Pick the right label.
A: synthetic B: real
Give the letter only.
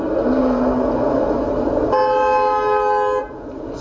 B